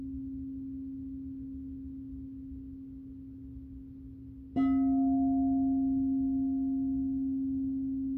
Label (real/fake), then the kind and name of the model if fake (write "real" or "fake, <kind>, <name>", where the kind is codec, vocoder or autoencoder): real